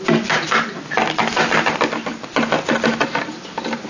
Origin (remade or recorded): recorded